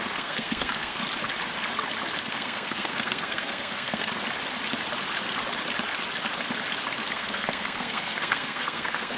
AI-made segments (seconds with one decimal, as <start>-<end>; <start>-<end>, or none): 0.0-1.0; 2.3-4.1; 7.1-9.2